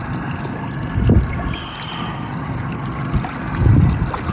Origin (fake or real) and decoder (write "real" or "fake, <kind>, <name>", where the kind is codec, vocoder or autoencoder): real